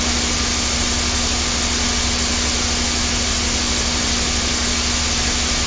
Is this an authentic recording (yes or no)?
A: yes